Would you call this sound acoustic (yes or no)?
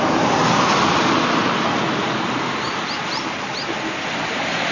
yes